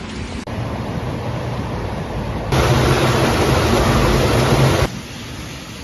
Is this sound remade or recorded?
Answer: recorded